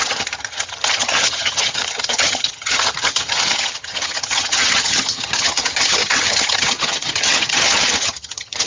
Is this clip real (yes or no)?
no